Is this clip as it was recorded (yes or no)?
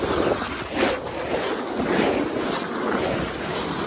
yes